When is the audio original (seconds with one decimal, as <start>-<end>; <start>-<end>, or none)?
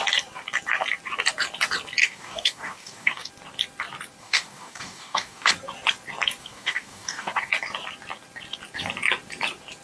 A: 0.0-2.0; 3.3-4.2; 5.5-6.4; 7.5-9.8